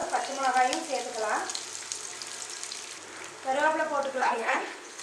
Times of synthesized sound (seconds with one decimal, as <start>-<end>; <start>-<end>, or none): 4.2-5.0